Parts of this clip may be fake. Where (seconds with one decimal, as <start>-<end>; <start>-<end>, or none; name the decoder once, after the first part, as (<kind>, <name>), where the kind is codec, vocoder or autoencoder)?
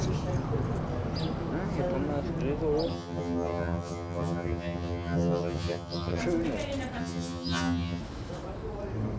2.9-6.2 (vocoder, HiFi-GAN); 7.0-8.0